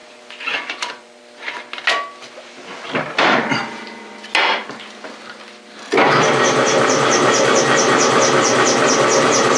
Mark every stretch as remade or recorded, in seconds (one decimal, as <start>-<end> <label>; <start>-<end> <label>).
0.0-1.2 remade; 1.2-9.6 recorded